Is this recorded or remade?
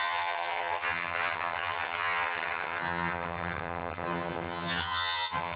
remade